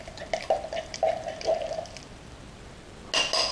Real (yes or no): yes